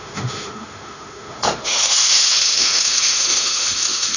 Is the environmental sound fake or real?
fake